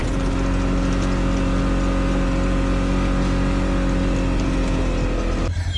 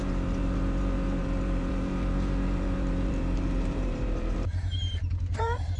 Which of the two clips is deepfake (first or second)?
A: second